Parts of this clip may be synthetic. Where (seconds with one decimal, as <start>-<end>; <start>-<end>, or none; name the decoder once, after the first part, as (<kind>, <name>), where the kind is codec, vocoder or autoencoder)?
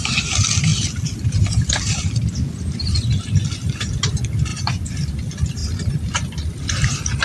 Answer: 4.5-5.1 (vocoder, Vocos)